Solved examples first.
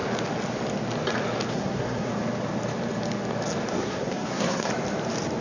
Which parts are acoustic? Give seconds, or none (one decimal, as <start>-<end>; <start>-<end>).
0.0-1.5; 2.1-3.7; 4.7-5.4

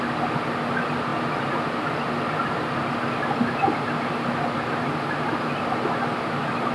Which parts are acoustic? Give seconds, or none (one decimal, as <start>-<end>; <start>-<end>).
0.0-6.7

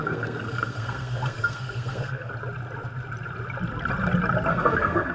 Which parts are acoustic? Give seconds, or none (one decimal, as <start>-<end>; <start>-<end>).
2.3-4.5

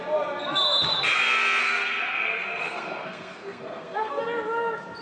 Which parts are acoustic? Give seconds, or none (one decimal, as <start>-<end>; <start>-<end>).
0.0-1.6; 4.2-5.0

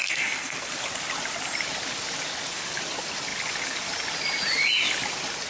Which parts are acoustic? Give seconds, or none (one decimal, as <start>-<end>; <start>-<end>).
0.7-5.5